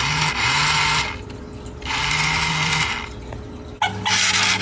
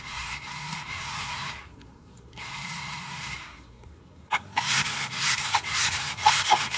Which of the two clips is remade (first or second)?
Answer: second